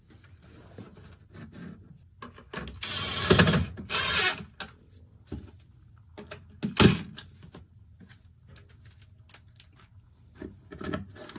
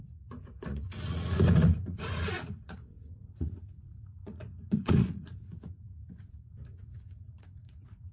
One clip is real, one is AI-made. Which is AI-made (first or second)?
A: second